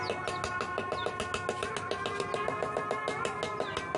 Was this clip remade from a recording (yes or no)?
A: no